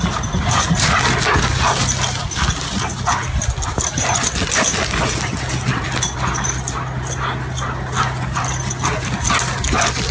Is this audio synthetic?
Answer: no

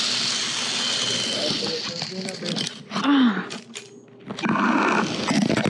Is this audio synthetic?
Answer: no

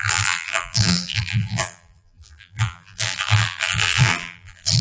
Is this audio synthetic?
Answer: yes